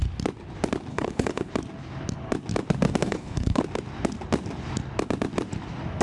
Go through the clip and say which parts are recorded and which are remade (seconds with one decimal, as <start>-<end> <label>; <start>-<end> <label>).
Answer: 0.0-0.9 recorded; 0.9-1.5 remade; 1.5-3.0 recorded; 3.0-3.6 remade; 3.6-6.0 recorded